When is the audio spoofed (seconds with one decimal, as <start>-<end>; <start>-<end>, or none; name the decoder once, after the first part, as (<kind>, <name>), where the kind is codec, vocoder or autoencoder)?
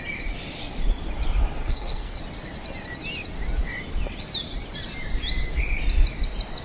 1.6-2.2 (codec, SNAC)